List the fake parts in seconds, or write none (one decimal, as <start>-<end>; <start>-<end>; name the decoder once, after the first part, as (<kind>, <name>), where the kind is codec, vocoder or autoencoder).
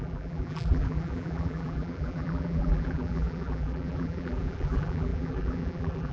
0.0-6.1 (vocoder, BigVGAN v2)